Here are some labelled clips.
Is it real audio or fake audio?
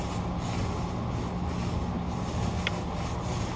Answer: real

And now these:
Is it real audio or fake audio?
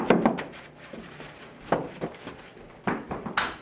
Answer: real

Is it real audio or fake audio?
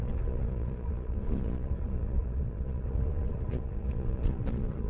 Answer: fake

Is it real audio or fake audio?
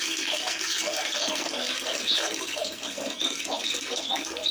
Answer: fake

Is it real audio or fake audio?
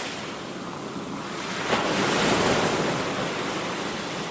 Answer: real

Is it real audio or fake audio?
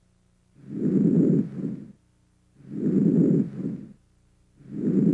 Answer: real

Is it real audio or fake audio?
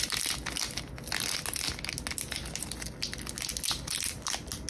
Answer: real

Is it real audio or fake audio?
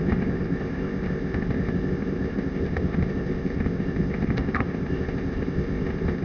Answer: fake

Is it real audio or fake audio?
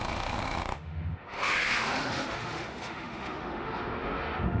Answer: fake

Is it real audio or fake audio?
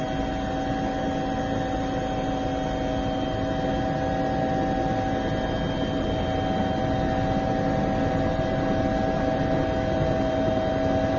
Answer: real